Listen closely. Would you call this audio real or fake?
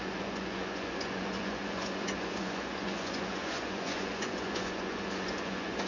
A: fake